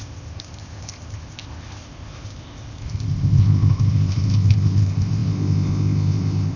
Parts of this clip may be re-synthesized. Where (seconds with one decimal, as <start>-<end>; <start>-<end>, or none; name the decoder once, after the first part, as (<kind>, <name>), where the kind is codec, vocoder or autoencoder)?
0.0-6.6 (codec, ZipCodec)